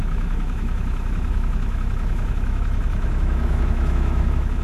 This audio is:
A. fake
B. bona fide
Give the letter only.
A